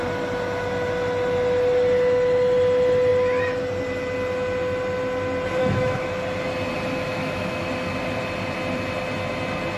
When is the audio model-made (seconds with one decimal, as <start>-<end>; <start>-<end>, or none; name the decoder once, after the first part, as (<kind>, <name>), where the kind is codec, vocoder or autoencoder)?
5.6-6.1 (autoencoder, DAC-VAE); 7.1-7.7